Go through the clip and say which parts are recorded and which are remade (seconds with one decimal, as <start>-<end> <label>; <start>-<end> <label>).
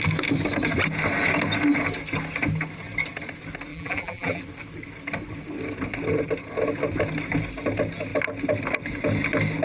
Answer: 0.0-3.7 recorded; 3.7-4.4 remade; 4.4-9.6 recorded